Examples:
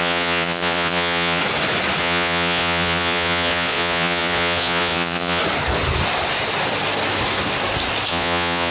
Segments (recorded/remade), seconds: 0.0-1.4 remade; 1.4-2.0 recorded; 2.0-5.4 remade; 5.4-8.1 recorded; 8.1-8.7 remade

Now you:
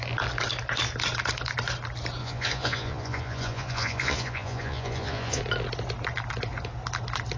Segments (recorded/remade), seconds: 0.0-2.2 recorded; 2.2-5.4 remade; 5.4-7.4 recorded

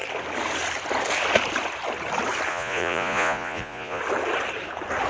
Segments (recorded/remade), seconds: 0.0-2.5 recorded; 2.5-4.0 remade; 4.0-5.1 recorded

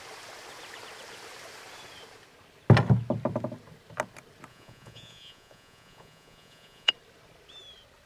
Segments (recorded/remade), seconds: 0.0-4.5 recorded; 4.5-6.9 remade; 6.9-8.1 recorded

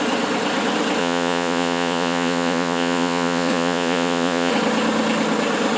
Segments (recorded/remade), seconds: 0.0-1.0 recorded; 1.0-4.5 remade; 4.5-5.8 recorded

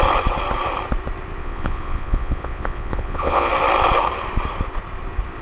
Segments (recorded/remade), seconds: 0.0-1.4 recorded; 1.4-3.5 remade; 3.5-5.4 recorded